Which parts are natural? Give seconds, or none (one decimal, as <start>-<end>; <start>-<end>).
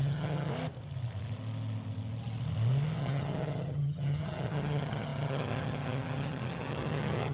0.5-3.0